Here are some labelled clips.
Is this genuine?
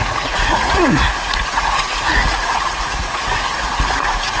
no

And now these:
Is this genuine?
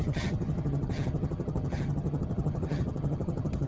no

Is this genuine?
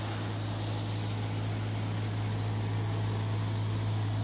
yes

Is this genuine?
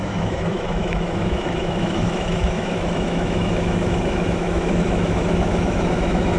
no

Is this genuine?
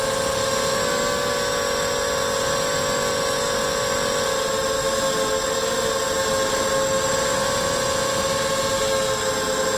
yes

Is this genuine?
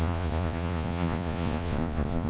no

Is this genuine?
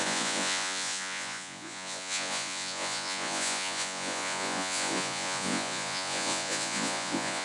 no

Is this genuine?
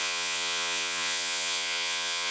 no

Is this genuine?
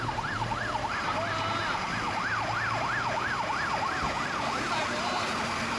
yes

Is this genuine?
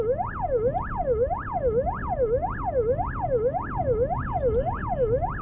yes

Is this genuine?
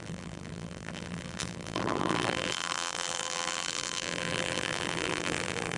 no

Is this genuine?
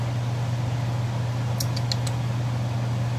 yes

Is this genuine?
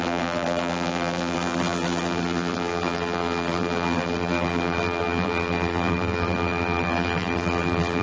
no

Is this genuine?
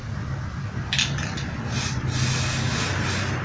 yes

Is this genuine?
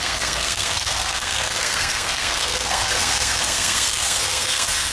no